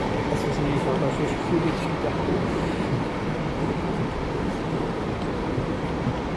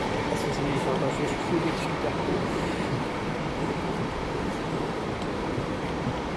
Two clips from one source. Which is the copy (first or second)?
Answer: second